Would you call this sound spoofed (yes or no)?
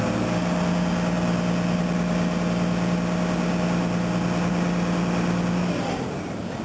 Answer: no